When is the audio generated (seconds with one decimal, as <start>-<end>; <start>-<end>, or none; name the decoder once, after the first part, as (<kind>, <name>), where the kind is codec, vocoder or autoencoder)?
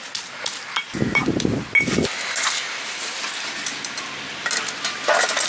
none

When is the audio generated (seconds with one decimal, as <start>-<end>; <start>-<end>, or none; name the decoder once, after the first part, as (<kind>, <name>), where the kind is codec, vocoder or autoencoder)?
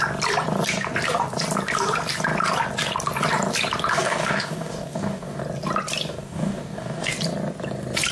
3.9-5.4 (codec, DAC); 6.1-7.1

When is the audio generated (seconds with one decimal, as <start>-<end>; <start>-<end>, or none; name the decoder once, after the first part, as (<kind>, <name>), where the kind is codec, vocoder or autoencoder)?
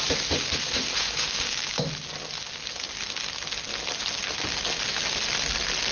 0.8-1.8 (codec, DAC)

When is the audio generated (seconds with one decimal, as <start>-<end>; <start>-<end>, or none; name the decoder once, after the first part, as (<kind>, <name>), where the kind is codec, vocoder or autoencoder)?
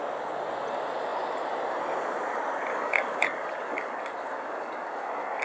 2.7-5.4 (codec, DAC)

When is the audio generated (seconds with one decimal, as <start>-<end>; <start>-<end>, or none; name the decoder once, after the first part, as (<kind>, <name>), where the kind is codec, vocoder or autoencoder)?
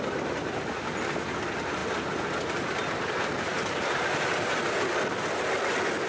none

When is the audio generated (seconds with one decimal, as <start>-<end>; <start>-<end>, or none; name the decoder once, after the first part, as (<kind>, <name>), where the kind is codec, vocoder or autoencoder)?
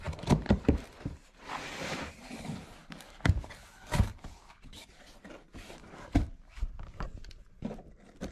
2.8-5.0 (codec, DAC); 5.8-6.6